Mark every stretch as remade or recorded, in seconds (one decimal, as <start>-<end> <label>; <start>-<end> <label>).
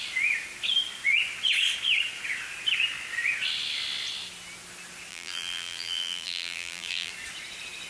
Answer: 0.0-5.1 recorded; 5.1-7.1 remade; 7.1-7.9 recorded